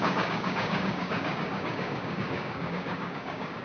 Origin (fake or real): fake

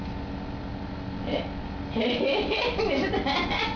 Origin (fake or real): real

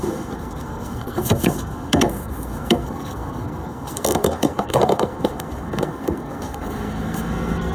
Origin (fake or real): fake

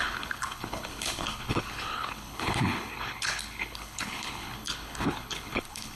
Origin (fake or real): fake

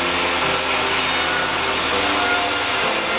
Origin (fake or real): real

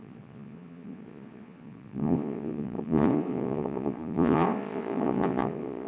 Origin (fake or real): fake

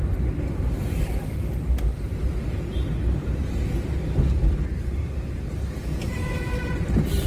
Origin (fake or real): fake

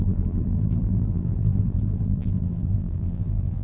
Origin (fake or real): fake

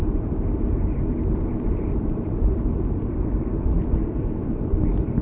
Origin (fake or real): fake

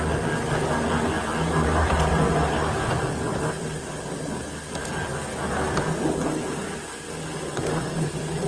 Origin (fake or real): real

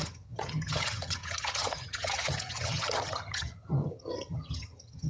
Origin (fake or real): fake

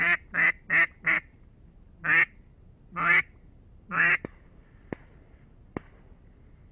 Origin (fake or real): real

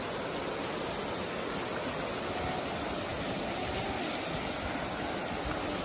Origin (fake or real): real